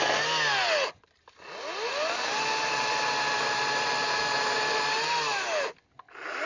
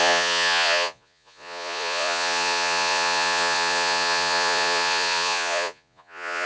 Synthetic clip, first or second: second